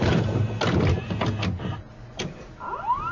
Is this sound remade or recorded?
recorded